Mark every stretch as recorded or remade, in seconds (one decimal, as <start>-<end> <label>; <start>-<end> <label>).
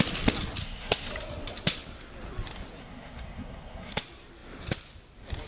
0.0-0.6 recorded; 0.6-1.1 remade; 1.1-2.8 recorded; 2.8-4.0 remade; 4.0-5.5 recorded